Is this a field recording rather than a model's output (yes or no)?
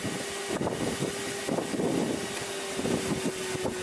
yes